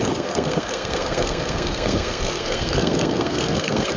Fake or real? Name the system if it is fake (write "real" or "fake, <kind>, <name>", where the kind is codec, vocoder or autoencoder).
fake, codec, SNAC